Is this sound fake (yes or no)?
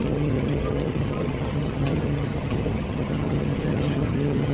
yes